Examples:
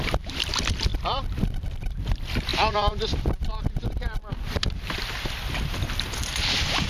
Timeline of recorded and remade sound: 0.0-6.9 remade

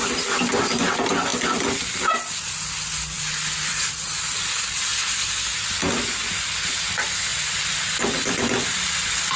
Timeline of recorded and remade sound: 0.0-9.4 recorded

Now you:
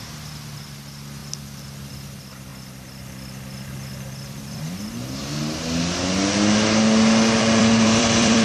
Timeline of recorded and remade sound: 0.0-1.2 remade; 1.2-1.9 recorded; 1.9-2.5 remade; 2.5-4.7 recorded; 4.7-5.2 remade; 5.2-7.4 recorded; 7.4-8.4 remade

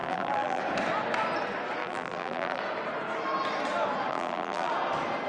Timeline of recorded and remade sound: 0.0-0.6 remade; 0.6-1.8 recorded; 1.8-2.6 remade; 2.6-4.1 recorded; 4.1-4.7 remade; 4.7-5.3 recorded